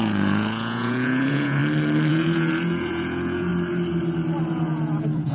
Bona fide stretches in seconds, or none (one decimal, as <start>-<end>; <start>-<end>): 1.6-2.1; 3.5-4.5